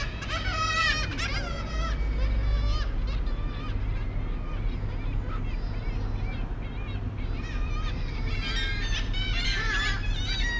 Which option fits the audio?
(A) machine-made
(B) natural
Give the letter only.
B